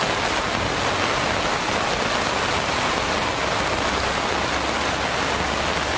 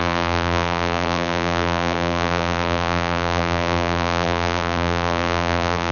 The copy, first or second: second